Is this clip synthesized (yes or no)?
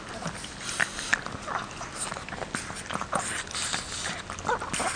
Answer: no